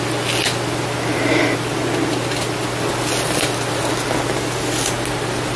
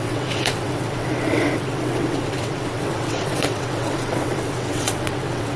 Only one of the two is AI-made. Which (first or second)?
second